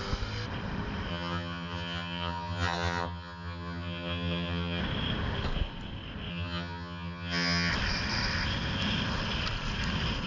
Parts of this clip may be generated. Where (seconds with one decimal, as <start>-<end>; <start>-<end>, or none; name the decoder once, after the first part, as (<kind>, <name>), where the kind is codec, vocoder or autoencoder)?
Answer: 1.1-4.8 (vocoder, HiFi-GAN); 6.3-7.7